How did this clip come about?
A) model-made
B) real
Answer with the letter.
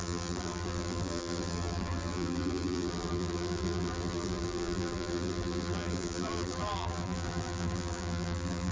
A